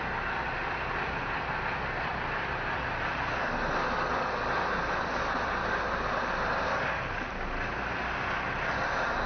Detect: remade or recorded recorded